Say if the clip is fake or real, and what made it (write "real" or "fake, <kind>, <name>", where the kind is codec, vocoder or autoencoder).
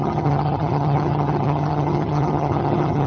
fake, vocoder, HiFi-GAN